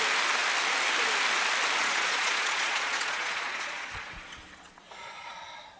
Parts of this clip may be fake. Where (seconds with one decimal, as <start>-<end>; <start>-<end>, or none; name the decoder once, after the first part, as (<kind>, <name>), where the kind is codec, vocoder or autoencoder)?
1.8-5.3 (vocoder, Vocos)